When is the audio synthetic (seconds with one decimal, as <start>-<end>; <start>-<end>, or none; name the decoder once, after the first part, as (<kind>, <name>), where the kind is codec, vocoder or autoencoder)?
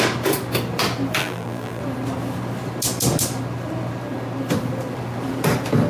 1.2-1.8 (vocoder, BigVGAN v2)